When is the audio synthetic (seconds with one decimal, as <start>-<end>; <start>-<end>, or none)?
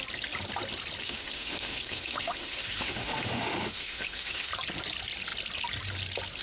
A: 1.0-4.5